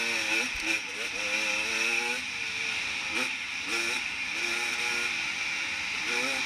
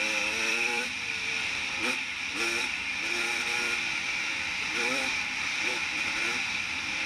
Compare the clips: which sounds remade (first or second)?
second